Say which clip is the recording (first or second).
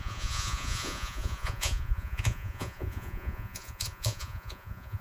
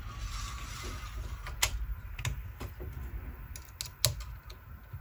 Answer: second